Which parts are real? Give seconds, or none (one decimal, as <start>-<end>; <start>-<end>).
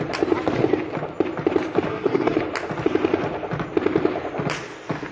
0.0-1.9; 2.4-5.1